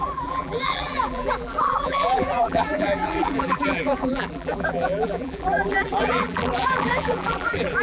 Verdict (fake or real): fake